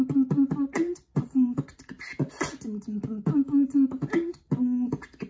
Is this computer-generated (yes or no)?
no